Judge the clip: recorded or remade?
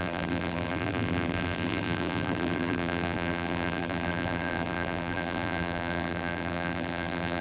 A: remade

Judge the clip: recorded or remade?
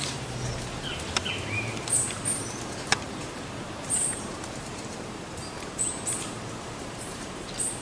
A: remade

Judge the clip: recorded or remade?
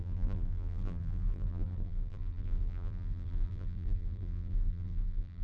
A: remade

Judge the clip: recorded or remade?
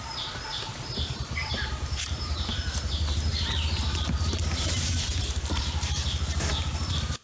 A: remade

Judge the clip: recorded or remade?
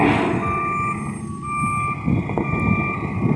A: recorded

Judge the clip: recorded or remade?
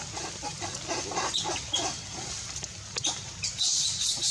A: recorded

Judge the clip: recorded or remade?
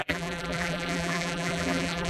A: remade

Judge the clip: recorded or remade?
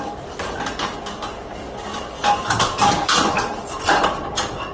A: recorded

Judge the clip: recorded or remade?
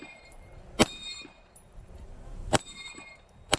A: remade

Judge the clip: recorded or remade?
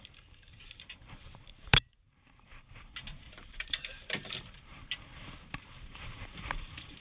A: remade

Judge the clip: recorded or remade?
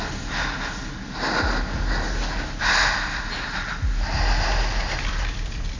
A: recorded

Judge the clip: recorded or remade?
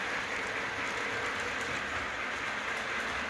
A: remade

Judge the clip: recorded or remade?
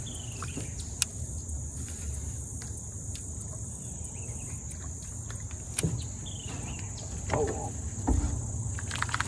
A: recorded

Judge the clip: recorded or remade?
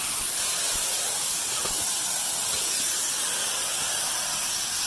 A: remade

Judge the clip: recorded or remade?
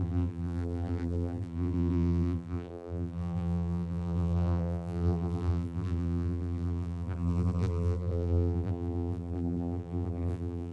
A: remade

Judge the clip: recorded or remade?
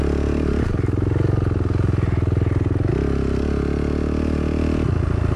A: recorded